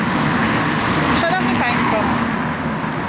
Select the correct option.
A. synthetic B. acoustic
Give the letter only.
B